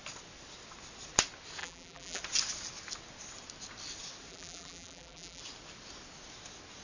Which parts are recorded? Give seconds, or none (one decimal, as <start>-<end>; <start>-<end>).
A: 0.0-1.6; 2.2-4.3; 5.4-6.8